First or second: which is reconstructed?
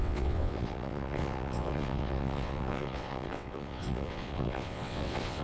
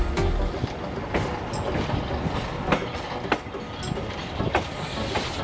first